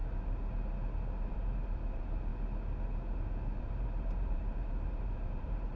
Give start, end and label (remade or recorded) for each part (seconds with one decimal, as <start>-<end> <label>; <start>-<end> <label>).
0.0-1.3 recorded; 1.3-2.3 remade; 2.3-3.6 recorded; 3.6-5.8 remade